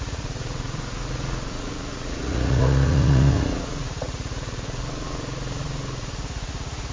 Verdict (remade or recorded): remade